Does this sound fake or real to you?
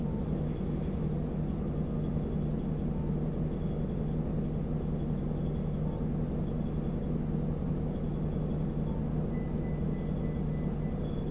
real